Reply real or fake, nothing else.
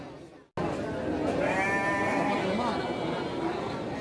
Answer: real